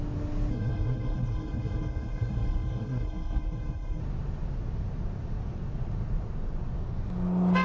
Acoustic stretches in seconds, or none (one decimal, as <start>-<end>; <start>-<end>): 0.0-0.5; 4.0-7.6